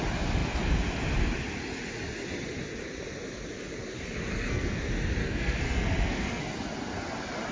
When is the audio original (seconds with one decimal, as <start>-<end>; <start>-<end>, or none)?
0.0-4.3; 4.8-5.2; 6.4-7.5